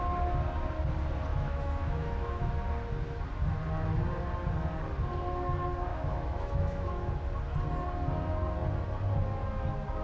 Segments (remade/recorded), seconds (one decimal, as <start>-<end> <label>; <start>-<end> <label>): 0.0-1.3 recorded; 1.3-2.5 remade; 2.5-5.9 recorded; 5.9-7.1 remade; 7.1-10.0 recorded